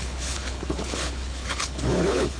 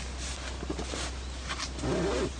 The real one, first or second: second